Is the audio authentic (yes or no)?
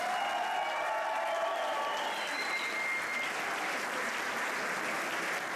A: yes